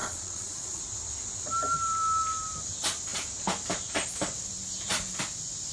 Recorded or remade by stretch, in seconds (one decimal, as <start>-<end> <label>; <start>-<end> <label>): 0.0-0.8 remade; 0.8-5.7 recorded

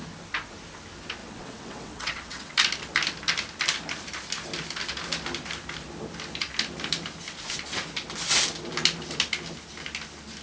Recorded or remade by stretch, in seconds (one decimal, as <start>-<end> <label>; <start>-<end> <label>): 0.0-1.2 recorded; 1.2-2.5 remade; 2.5-10.4 recorded

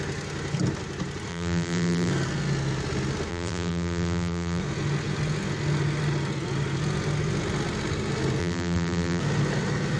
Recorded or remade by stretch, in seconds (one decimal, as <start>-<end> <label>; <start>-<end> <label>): 0.0-1.3 recorded; 1.3-2.1 remade; 2.1-3.3 recorded; 3.3-4.6 remade; 4.6-8.4 recorded; 8.4-9.2 remade; 9.2-10.0 recorded

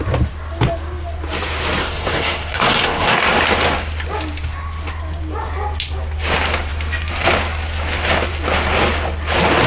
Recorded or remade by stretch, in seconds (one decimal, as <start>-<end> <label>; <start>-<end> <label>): 0.0-1.8 recorded; 1.8-3.2 remade; 3.2-9.7 recorded

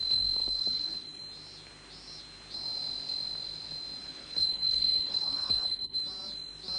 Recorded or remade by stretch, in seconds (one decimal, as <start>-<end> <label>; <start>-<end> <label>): 0.0-0.4 recorded; 0.4-1.2 remade; 1.2-4.0 recorded; 4.0-6.0 remade; 6.0-6.8 recorded

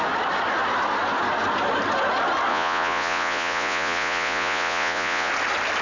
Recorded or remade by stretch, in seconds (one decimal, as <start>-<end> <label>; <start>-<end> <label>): 0.0-2.5 recorded; 2.5-5.3 remade; 5.3-5.8 recorded

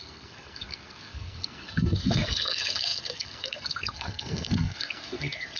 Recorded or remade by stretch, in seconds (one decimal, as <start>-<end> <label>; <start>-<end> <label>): 0.0-5.6 remade